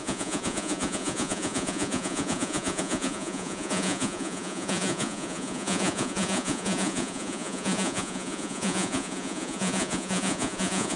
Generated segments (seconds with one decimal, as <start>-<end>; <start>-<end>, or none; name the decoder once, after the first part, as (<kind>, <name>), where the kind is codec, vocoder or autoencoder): 0.0-11.0 (vocoder, Vocos)